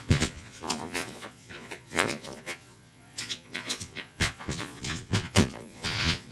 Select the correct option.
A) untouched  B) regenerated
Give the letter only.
B